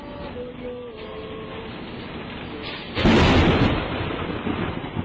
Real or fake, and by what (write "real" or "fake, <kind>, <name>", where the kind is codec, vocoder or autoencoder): real